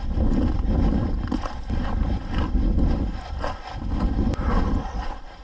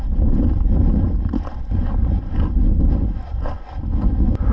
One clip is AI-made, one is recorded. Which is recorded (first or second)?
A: second